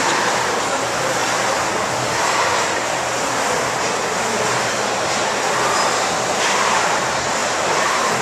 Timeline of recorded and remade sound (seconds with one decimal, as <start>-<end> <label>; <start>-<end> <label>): 0.0-1.2 remade; 1.2-3.7 recorded; 3.7-8.2 remade